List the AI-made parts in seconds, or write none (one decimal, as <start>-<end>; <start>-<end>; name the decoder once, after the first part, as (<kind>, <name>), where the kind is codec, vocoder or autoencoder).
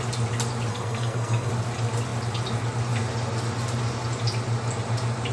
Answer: 0.7-1.5 (codec, SNAC)